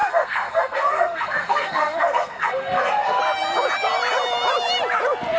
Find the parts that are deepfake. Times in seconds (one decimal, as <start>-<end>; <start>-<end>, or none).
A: 0.0-3.2